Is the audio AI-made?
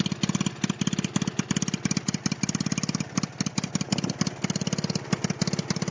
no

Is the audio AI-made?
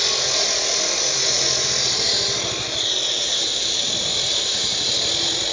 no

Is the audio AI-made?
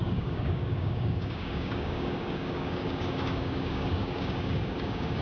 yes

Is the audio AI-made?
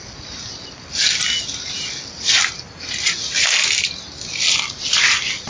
no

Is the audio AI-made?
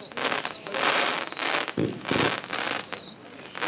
no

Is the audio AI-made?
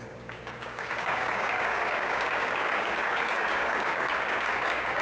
yes